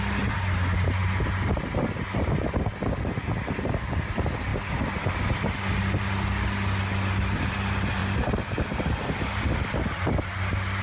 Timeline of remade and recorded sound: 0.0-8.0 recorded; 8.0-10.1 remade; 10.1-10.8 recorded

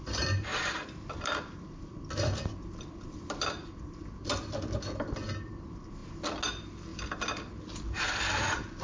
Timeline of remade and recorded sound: 0.0-6.0 remade; 6.0-6.5 recorded; 6.5-6.9 remade; 6.9-7.9 recorded; 7.9-8.8 remade